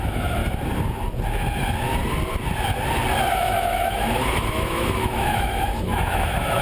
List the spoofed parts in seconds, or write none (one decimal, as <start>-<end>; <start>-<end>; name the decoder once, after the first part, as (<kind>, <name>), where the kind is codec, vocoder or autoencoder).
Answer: 0.0-0.4 (autoencoder, DAC-VAE); 3.3-6.6